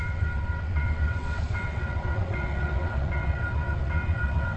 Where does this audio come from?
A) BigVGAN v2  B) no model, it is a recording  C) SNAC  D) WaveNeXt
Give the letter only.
D